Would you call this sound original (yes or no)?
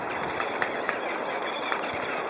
yes